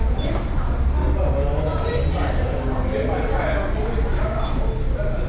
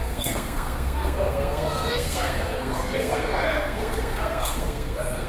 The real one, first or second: first